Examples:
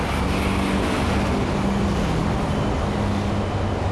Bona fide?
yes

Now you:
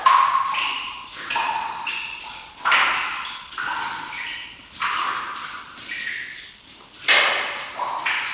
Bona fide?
yes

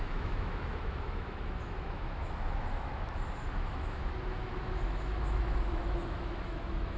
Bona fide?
no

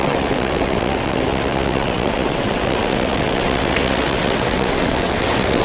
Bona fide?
no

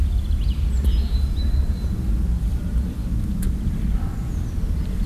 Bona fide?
yes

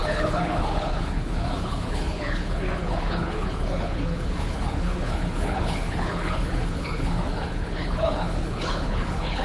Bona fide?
no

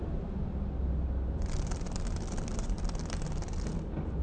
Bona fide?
yes